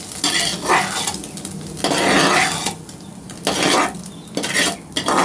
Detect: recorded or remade recorded